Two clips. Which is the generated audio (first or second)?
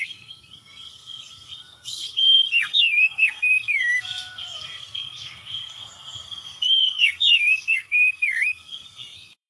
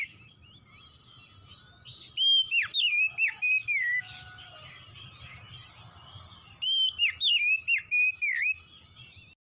first